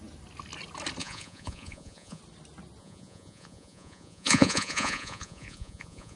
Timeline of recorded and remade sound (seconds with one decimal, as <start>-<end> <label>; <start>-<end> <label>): 0.0-1.0 recorded; 1.0-2.2 remade; 2.2-2.8 recorded; 2.8-6.2 remade